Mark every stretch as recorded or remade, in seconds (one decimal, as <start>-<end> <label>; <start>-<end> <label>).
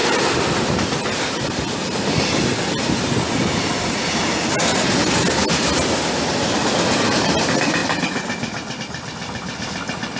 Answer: 0.0-0.7 remade; 0.7-10.2 recorded